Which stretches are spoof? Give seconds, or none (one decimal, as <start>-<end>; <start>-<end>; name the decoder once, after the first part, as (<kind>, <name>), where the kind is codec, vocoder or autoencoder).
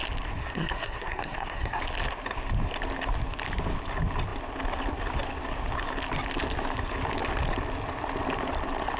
0.4-1.8 (codec, SNAC)